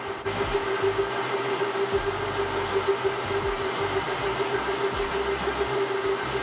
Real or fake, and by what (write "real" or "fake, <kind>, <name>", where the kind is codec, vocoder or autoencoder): real